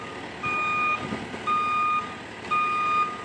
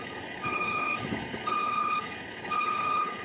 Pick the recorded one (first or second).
first